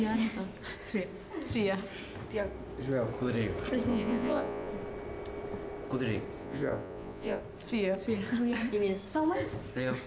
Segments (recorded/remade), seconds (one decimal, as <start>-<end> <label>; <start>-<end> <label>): 0.0-3.9 recorded; 3.9-4.7 remade; 4.7-6.4 recorded; 6.4-7.4 remade; 7.4-10.1 recorded